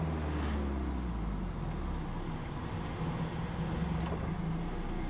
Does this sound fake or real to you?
real